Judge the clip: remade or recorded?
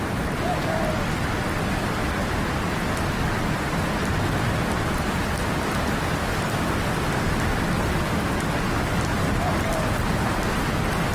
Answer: recorded